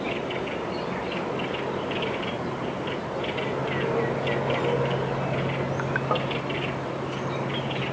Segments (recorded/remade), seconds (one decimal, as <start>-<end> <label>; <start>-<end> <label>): 0.0-7.9 recorded